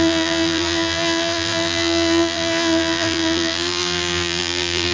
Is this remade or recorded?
remade